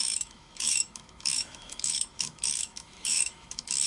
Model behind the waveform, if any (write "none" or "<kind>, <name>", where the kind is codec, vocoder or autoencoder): autoencoder, DAC-VAE